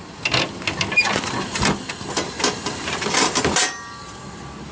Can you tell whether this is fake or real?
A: real